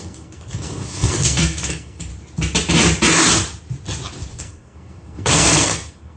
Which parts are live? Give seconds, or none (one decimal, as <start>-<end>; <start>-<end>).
2.1-4.3

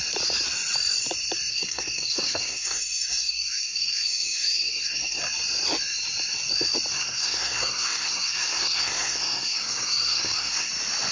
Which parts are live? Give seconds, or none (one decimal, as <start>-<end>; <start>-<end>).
0.0-1.5; 5.2-6.9; 10.7-11.1

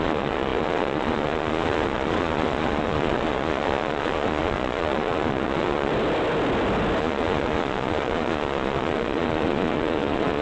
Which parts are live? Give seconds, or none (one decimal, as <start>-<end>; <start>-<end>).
5.9-7.0